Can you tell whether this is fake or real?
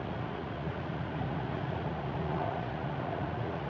fake